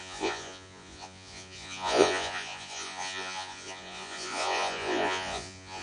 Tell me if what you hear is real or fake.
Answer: fake